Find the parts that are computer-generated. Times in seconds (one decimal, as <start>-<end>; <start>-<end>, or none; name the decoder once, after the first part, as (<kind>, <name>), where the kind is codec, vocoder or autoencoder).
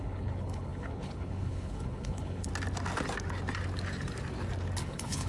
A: 0.0-2.5 (codec, HILCodec); 4.8-5.3